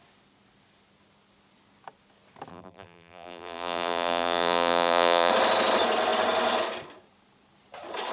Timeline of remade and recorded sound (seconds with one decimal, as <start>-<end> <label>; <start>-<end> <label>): 0.0-2.5 recorded; 2.5-5.3 remade; 5.3-8.1 recorded

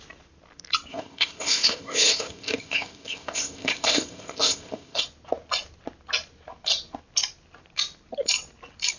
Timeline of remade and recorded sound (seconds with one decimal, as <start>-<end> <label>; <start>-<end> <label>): 0.0-0.9 recorded; 0.9-5.0 remade; 5.0-9.0 recorded

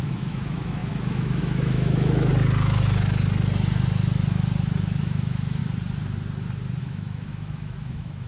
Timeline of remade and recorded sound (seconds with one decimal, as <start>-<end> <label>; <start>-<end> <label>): 0.0-2.3 remade; 2.3-5.0 recorded; 5.0-5.6 remade; 5.6-6.8 recorded; 6.8-8.3 remade

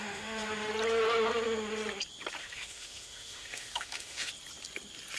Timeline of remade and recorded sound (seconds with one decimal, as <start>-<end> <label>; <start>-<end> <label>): 0.0-0.7 remade; 0.7-2.4 recorded; 2.4-4.3 remade; 4.3-5.2 recorded

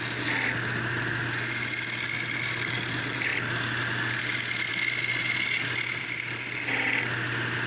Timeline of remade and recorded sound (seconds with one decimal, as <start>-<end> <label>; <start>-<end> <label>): 0.0-7.7 recorded

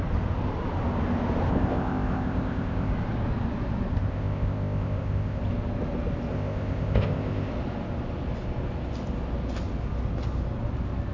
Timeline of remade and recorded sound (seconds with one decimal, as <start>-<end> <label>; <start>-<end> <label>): 0.0-1.5 recorded; 1.5-2.9 remade; 2.9-3.9 recorded; 3.9-5.4 remade; 5.4-6.3 recorded; 6.3-7.5 remade; 7.5-11.1 recorded